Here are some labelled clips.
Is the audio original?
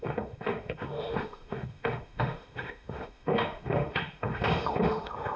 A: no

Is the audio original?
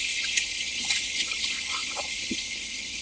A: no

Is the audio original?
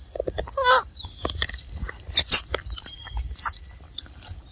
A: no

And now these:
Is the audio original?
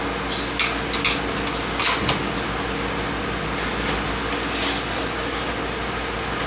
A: yes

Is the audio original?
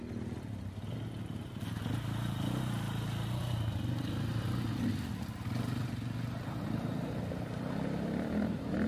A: yes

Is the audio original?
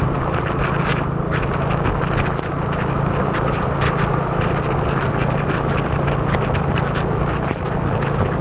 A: yes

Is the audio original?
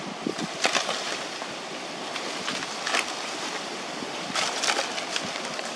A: no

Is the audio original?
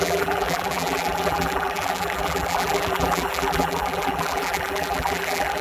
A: no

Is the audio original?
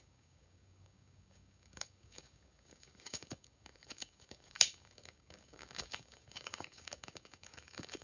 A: no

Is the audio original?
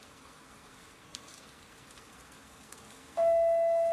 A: no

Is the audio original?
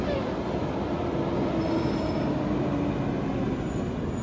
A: yes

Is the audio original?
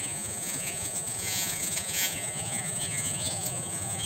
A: no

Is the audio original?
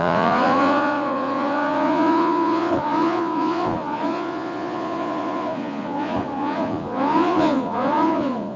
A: no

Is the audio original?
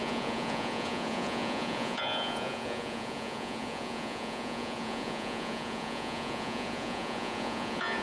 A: no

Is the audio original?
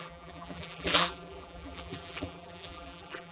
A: no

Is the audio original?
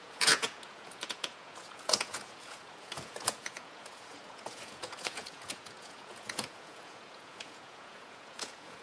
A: no